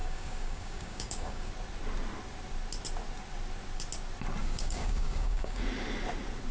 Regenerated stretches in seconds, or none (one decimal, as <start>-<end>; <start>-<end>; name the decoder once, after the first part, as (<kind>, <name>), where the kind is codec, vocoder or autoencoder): 0.0-1.5 (codec, DAC); 4.4-5.6

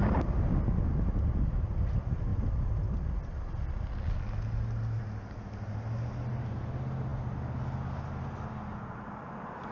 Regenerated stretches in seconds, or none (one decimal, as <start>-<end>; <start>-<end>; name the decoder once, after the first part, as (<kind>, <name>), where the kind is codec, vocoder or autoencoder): none

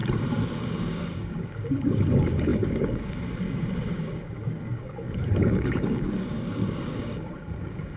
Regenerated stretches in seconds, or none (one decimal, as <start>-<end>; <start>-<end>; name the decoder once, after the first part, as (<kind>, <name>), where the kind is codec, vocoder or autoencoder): 0.6-8.0 (codec, DAC)

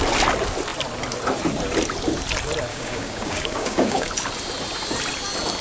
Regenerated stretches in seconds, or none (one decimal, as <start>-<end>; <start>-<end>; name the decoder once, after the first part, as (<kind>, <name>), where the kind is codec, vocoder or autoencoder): 2.7-4.1 (codec, DAC)

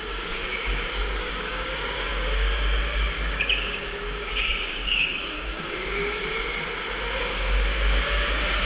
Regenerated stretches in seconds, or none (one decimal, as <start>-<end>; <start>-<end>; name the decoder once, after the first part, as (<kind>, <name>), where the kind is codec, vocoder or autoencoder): 0.0-6.2 (codec, DAC); 7.2-8.6

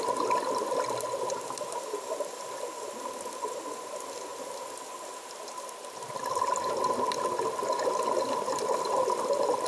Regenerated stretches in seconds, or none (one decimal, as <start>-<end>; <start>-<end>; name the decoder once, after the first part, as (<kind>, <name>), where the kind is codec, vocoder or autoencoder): none

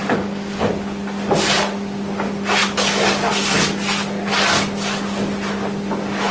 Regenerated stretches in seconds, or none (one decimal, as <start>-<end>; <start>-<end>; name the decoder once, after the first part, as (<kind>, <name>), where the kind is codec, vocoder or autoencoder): 0.0-0.7 (codec, DAC); 2.6-3.3

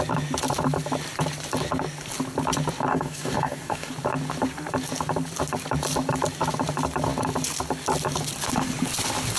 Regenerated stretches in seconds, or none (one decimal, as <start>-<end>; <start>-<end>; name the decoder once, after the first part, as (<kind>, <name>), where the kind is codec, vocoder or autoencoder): 2.9-3.9 (codec, DAC)